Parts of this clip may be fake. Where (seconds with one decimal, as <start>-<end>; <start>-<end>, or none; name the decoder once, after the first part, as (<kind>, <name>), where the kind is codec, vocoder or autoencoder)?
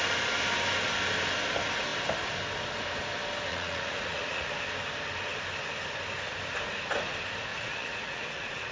3.5-4.5 (vocoder, Vocos); 7.5-8.7